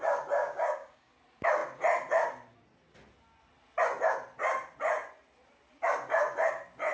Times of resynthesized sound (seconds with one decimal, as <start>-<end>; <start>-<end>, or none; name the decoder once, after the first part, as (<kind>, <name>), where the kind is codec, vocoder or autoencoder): 0.4-1.1 (codec, DAC)